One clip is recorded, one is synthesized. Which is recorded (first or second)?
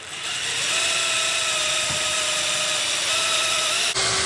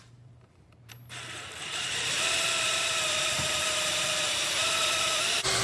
first